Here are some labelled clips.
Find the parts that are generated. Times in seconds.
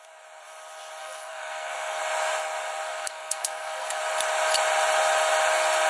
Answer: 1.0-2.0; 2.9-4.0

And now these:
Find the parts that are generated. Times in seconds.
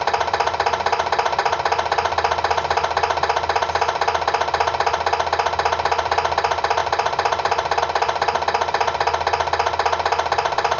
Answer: none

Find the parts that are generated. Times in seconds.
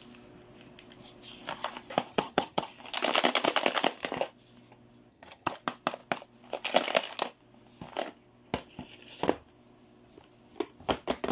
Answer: 2.1-2.7; 5.1-5.6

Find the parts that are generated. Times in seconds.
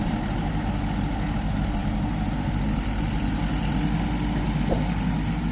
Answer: none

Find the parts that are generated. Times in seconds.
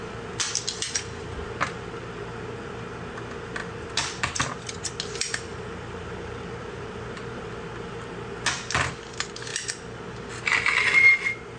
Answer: 3.6-4.2; 5.5-7.5; 9.5-10.2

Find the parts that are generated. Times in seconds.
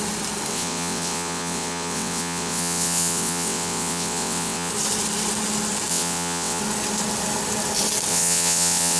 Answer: 0.5-4.7; 5.9-6.6; 8.1-9.0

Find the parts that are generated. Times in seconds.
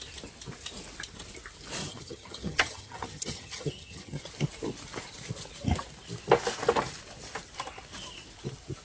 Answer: 1.8-4.3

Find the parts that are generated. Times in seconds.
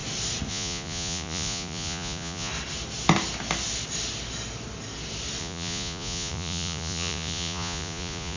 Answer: 0.5-2.5; 5.4-8.4